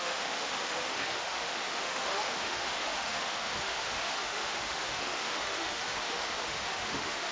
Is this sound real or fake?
fake